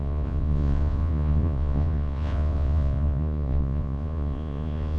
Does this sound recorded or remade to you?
remade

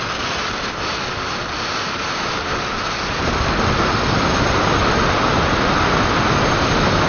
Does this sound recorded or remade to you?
recorded